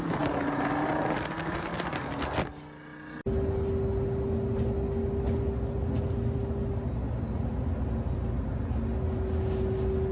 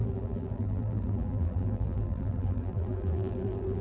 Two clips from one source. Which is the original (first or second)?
first